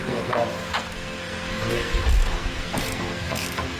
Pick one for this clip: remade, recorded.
remade